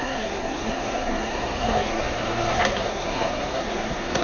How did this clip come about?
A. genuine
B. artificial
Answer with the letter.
B